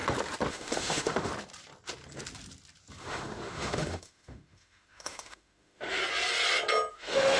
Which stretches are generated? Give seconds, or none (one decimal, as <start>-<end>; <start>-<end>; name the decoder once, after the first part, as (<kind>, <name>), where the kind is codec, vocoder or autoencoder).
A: 0.5-1.3 (autoencoder, DAC-VAE); 3.0-6.0; 6.9-7.4